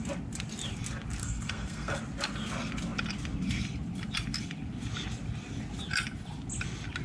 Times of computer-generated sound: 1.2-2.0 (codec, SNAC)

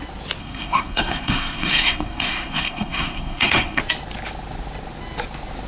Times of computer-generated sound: 0.4-3.8 (codec, SNAC)

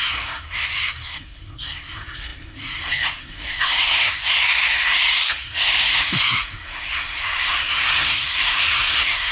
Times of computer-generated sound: 0.0-9.3 (codec, SNAC)

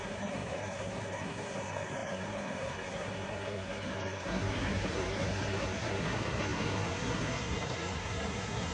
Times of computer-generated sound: 0.0-8.7 (codec, SNAC)